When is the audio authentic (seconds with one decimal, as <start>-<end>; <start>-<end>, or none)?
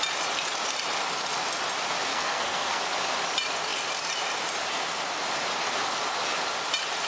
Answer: 0.0-2.1; 2.8-7.1